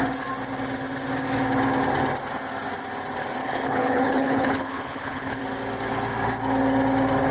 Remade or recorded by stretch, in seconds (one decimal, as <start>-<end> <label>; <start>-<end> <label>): 0.0-3.4 recorded; 3.4-5.4 remade; 5.4-7.3 recorded